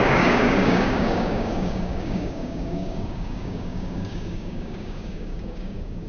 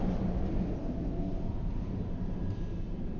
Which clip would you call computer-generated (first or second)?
first